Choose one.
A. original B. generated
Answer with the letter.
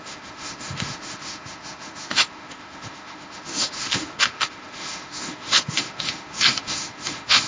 B